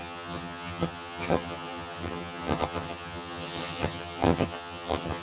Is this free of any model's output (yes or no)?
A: no